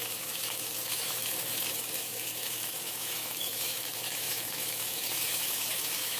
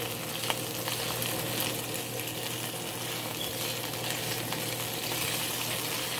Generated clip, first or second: first